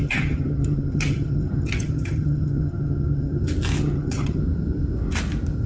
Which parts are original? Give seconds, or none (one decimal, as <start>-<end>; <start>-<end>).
3.4-3.8; 4.4-5.7